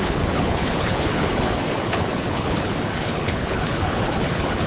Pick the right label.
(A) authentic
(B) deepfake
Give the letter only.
B